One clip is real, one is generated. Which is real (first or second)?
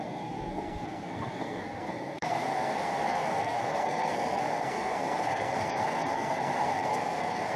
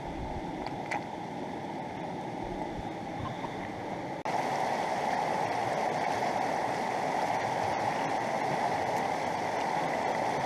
second